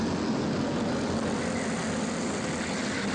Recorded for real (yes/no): yes